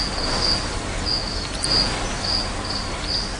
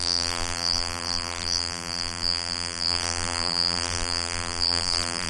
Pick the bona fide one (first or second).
first